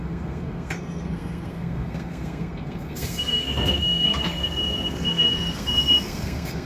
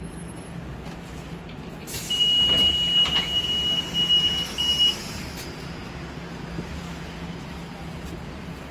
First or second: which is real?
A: second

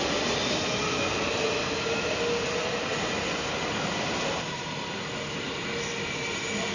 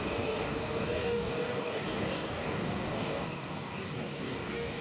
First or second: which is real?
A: first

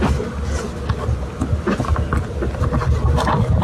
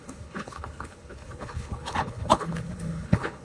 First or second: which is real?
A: first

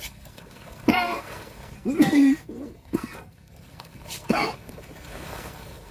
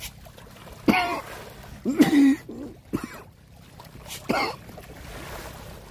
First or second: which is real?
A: second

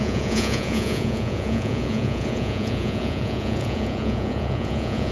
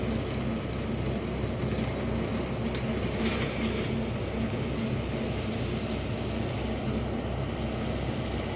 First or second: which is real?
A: second